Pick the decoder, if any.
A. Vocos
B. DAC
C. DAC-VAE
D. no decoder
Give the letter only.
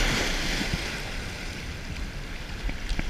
D